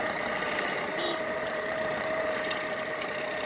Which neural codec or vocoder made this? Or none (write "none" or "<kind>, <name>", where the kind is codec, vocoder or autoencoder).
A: vocoder, BigVGAN v2